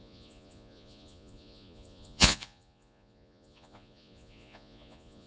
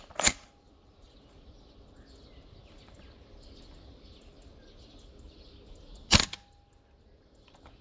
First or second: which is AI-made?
first